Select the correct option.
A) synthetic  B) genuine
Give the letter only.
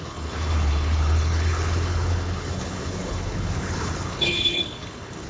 A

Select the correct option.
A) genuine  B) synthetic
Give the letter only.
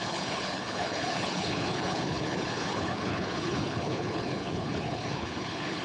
B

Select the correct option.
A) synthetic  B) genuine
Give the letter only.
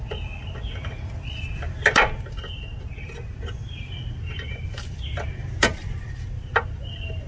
B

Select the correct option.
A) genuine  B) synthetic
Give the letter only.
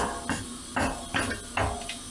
A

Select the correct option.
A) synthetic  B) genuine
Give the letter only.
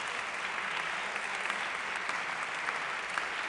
B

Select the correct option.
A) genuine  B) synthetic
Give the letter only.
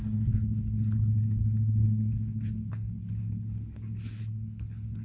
B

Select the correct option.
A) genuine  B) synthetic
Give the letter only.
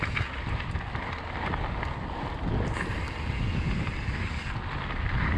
A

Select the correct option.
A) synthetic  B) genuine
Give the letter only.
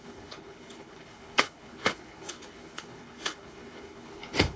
A